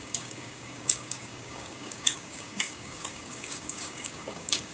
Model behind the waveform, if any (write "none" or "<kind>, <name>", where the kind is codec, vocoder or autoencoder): codec, DAC